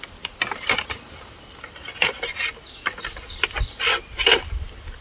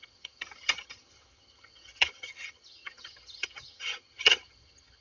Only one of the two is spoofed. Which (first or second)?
second